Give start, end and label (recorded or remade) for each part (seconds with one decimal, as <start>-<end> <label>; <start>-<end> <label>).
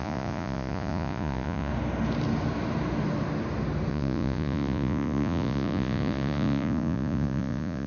0.0-1.7 remade; 1.7-3.9 recorded; 3.9-7.9 remade